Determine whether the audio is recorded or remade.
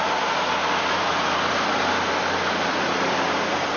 recorded